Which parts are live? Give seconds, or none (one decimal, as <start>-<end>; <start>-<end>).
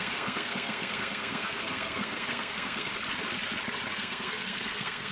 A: 2.9-3.9